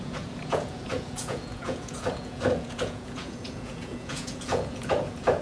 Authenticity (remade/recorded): remade